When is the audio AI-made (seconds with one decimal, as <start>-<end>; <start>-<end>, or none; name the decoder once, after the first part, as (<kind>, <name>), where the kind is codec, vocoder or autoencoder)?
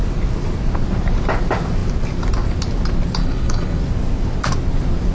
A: 3.2-3.8 (codec, HILCodec)